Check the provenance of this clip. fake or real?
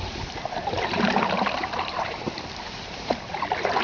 fake